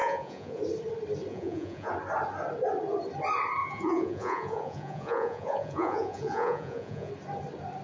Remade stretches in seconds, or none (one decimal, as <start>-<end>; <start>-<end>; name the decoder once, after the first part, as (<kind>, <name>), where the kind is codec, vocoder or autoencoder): 0.0-0.6 (vocoder, Vocos); 1.3-1.9; 3.6-7.1